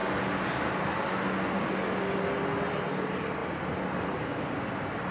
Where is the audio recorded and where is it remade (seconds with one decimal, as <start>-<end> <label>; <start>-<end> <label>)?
0.0-5.1 recorded